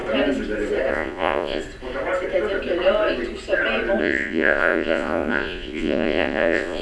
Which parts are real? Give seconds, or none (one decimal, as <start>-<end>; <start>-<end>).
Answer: 0.0-0.9; 1.6-4.0